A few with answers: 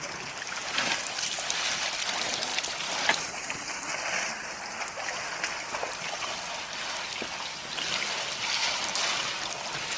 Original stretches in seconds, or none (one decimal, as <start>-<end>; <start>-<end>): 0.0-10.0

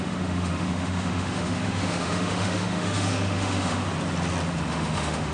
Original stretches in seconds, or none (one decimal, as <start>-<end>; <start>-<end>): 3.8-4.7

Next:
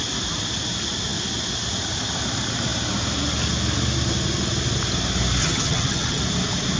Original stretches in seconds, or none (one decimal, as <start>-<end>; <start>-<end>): 0.0-5.4; 6.2-6.8

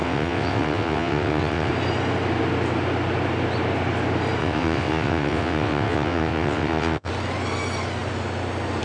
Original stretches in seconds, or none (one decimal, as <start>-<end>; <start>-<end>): 1.7-4.4; 7.1-8.8

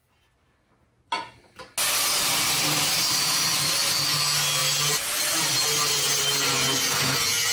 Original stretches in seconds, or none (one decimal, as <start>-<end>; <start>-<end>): 0.0-7.5

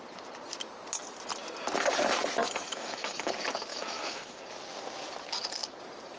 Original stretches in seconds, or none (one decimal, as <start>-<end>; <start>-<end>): 0.0-2.4; 3.3-3.7; 4.4-6.2

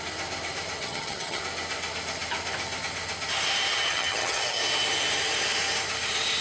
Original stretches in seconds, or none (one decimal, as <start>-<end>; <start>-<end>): 0.0-0.8; 1.4-3.9; 4.6-6.4

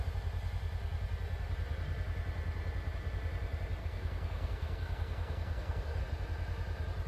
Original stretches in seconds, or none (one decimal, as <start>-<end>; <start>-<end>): 0.0-3.8; 6.0-7.1